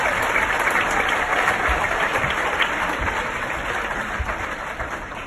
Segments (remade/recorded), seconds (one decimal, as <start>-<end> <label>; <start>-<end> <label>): 0.0-5.3 remade